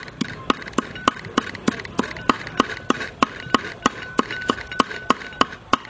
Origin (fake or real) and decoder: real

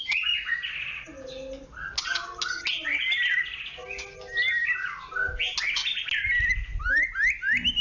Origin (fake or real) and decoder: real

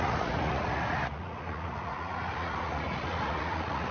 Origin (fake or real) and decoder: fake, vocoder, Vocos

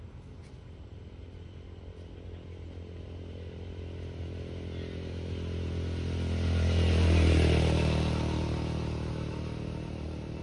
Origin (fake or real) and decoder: real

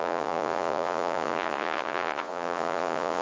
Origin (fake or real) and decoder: fake, vocoder, Vocos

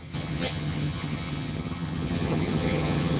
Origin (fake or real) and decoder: fake, vocoder, HiFi-GAN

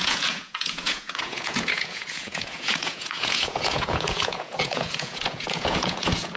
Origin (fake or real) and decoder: fake, vocoder, Vocos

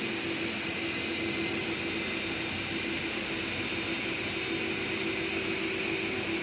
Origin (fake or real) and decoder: real